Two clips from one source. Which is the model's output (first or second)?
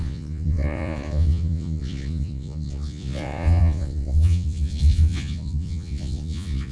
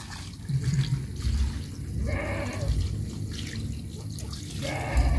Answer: first